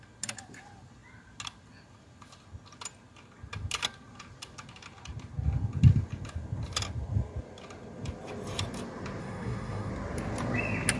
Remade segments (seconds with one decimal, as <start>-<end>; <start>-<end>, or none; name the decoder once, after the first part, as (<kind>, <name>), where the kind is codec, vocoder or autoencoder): 9.2-9.9 (codec, SNAC)